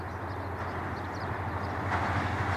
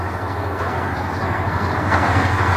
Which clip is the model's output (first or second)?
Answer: second